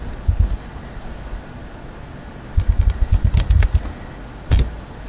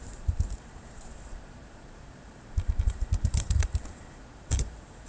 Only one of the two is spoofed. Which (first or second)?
second